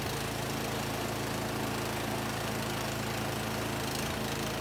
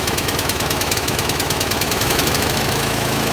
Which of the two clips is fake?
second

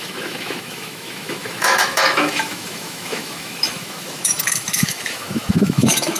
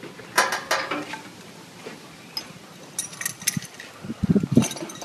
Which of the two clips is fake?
first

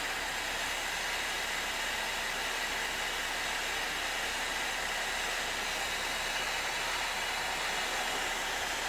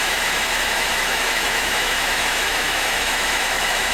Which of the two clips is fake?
second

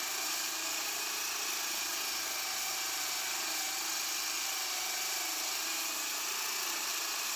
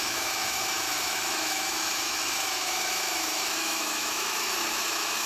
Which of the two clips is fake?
second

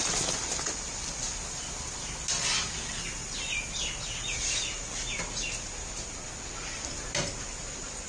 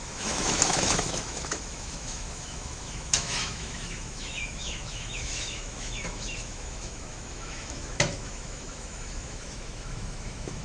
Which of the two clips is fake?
second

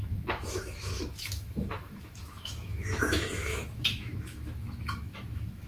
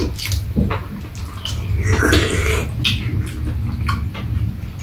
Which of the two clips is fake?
first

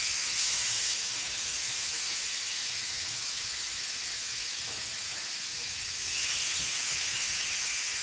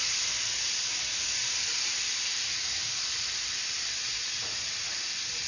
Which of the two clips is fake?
first